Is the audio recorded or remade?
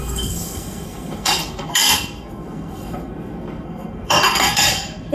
remade